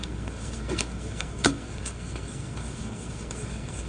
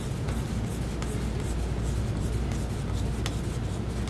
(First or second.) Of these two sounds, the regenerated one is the first